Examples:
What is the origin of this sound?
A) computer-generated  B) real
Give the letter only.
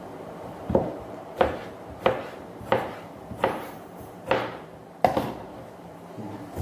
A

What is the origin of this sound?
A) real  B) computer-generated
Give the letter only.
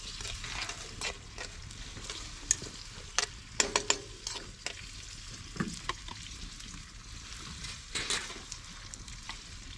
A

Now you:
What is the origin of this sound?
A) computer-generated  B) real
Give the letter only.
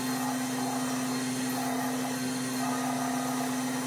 B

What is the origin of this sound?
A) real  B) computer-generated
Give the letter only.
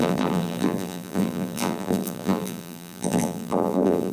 B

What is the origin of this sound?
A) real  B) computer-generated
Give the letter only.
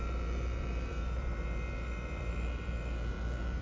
B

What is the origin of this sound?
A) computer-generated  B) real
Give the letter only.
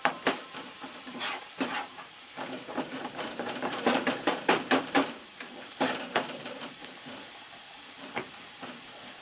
A